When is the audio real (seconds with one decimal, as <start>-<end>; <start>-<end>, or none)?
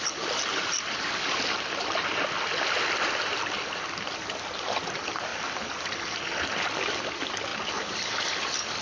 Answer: 0.0-8.8